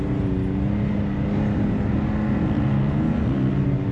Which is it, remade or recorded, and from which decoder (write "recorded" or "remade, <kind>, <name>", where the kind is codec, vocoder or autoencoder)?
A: recorded